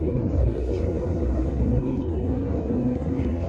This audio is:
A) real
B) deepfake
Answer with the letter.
B